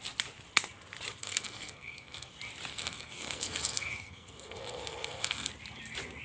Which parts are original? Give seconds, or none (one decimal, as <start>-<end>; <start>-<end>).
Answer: 0.0-1.2; 2.3-2.7; 5.5-6.2